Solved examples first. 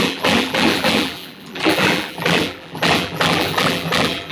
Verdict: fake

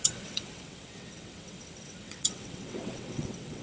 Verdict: fake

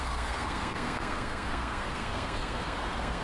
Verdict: fake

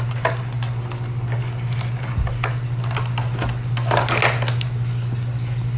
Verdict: real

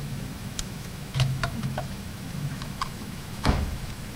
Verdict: fake